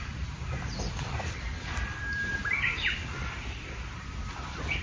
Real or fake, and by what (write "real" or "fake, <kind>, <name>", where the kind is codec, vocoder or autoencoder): fake, vocoder, BigVGAN v2